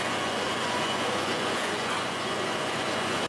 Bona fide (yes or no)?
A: no